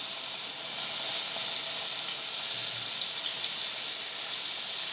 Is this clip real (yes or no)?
yes